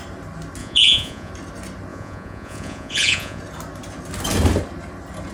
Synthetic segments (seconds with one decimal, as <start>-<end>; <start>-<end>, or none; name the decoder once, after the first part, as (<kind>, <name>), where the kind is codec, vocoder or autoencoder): 0.6-1.3 (vocoder, Vocos); 1.9-3.4